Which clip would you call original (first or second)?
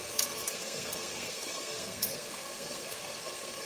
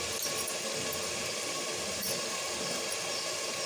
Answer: second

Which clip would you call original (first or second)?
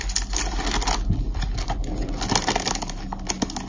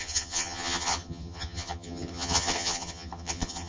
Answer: first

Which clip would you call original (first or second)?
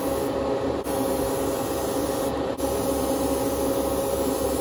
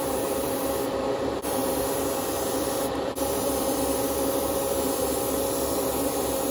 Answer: first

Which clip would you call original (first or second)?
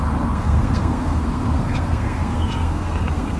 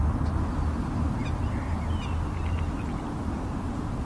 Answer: second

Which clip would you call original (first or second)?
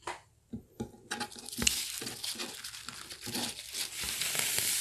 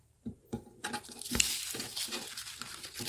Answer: first